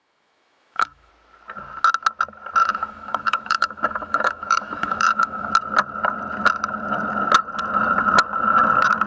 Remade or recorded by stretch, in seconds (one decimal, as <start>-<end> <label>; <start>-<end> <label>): 0.0-1.1 remade; 1.1-2.6 recorded; 2.6-5.5 remade; 5.5-9.1 recorded